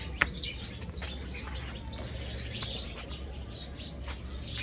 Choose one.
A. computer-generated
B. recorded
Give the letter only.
B